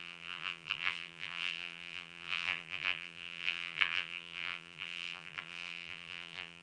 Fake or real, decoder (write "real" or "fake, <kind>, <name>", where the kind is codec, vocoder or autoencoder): fake, vocoder, BigVGAN v2